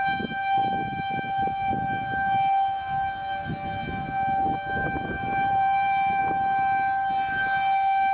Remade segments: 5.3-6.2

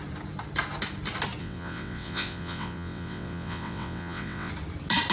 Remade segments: 1.4-4.5

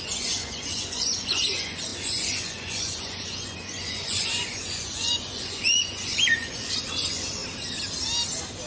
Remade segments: 0.0-7.4

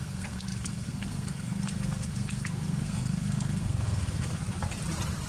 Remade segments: 0.0-4.4

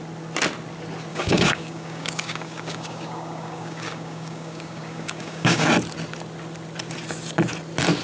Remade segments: 1.1-5.7

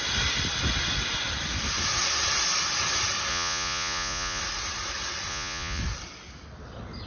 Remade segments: 3.3-4.4; 5.3-5.8

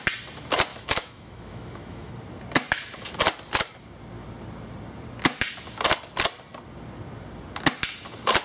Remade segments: 0.7-2.1

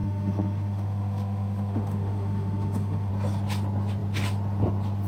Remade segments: 0.0-3.1